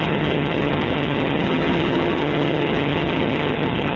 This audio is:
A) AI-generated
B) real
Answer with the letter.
A